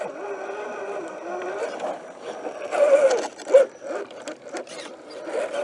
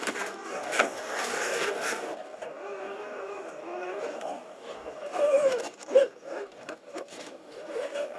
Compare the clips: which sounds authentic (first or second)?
first